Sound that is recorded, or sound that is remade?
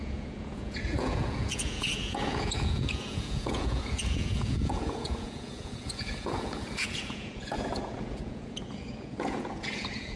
remade